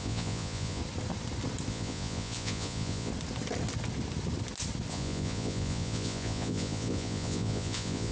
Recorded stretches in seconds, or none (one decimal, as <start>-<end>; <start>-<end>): 0.8-1.7; 3.1-4.9